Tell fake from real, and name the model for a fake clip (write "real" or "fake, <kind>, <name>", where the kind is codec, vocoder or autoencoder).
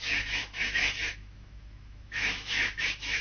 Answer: fake, autoencoder, DAC-VAE